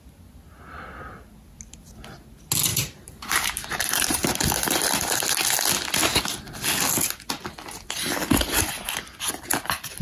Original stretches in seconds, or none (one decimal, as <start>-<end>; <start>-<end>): 0.0-2.7; 4.4-10.0